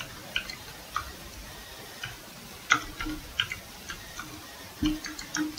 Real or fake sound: real